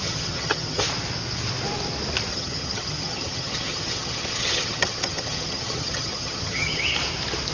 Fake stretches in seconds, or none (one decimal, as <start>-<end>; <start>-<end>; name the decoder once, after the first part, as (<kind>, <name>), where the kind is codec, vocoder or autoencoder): 0.0-0.8 (vocoder, HiFi-GAN); 2.3-6.8